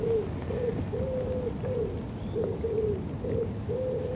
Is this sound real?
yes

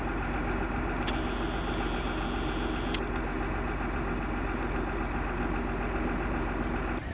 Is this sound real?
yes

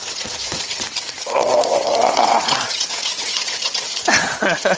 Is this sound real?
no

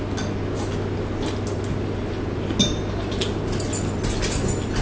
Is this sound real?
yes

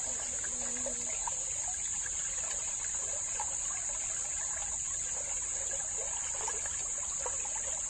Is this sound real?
yes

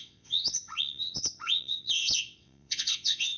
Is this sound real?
no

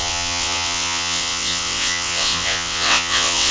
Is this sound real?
no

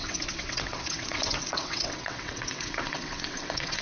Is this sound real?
no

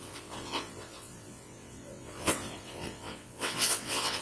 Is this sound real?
no